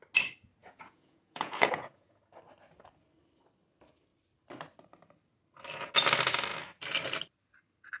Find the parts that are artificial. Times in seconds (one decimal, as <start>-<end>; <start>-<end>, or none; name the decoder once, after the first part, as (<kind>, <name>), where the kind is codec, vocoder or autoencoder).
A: 0.6-2.2 (vocoder, Vocos)